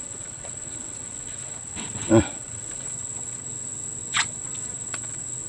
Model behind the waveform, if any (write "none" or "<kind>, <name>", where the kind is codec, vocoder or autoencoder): vocoder, WaveNeXt